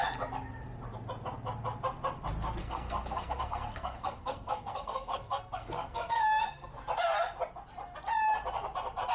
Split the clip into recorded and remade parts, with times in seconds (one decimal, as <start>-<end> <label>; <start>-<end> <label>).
0.0-2.6 recorded; 2.6-6.7 remade; 6.7-9.1 recorded